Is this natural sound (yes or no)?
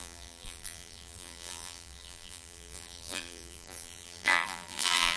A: no